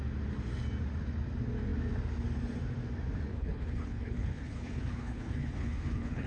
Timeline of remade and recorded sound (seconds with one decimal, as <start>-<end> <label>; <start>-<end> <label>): 0.0-3.3 recorded; 3.3-6.3 remade